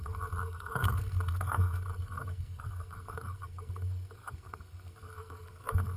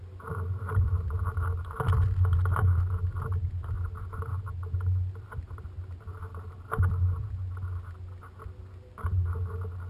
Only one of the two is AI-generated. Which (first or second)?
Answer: first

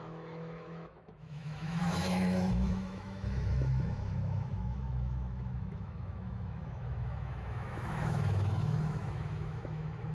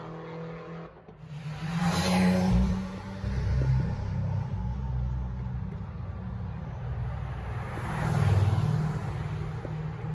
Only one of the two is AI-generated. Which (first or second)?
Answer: first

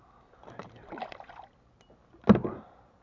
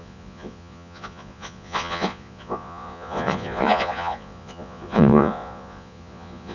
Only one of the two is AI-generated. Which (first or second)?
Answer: second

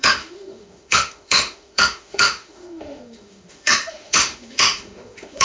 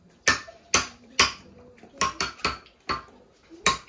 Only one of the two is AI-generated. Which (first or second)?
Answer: first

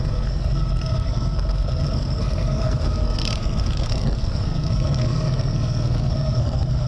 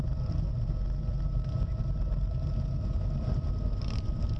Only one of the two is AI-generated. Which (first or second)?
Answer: first